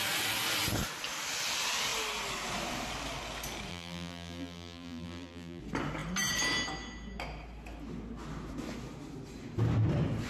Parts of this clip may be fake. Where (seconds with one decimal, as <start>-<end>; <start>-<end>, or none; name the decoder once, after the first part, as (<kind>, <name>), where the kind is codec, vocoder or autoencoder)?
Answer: 3.7-5.6 (vocoder, BigVGAN v2)